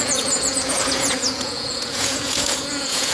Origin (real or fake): fake